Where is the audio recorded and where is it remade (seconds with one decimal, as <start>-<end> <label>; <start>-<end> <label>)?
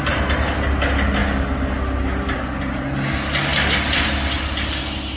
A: 0.0-5.2 recorded